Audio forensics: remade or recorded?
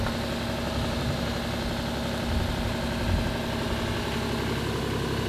recorded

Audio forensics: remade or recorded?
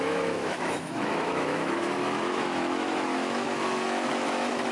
remade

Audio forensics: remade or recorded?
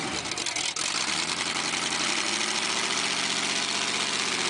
recorded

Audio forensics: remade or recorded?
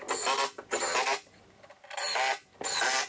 recorded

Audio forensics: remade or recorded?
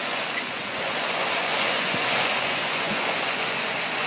remade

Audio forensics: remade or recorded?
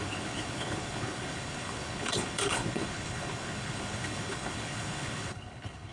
remade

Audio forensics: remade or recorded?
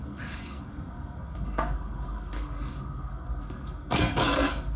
remade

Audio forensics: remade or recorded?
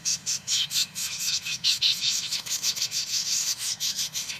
remade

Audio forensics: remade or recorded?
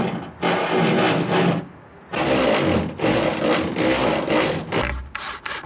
recorded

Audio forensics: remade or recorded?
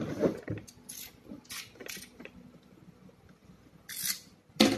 recorded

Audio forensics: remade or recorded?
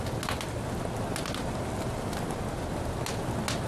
recorded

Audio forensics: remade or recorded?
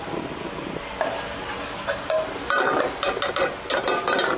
recorded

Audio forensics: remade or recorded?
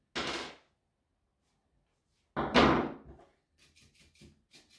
recorded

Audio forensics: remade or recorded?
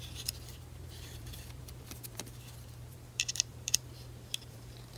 remade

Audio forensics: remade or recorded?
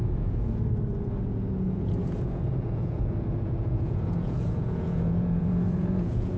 remade